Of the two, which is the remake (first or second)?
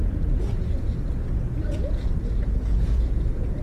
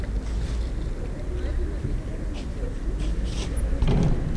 first